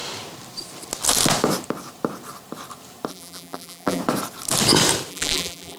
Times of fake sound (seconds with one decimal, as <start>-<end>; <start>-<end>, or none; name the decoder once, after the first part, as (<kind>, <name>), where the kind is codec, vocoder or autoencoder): 3.1-4.0 (vocoder, BigVGAN v2); 5.1-5.8